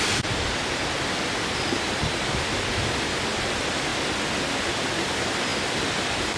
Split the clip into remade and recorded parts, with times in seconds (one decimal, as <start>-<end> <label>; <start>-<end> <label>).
0.0-0.8 remade; 0.8-2.2 recorded; 2.2-3.9 remade; 3.9-4.7 recorded; 4.7-5.5 remade; 5.5-6.0 recorded; 6.0-6.4 remade